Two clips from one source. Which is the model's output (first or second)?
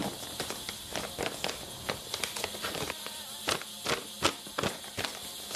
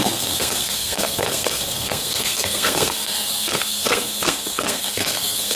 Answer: second